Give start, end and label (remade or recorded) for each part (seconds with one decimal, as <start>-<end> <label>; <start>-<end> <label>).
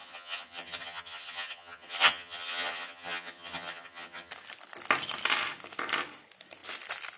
0.0-4.3 remade; 4.3-7.2 recorded